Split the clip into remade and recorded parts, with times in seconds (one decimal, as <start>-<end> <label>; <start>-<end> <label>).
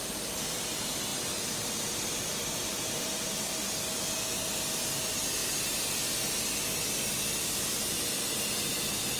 0.0-9.2 recorded